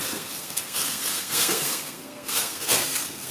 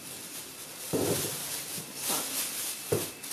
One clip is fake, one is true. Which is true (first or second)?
second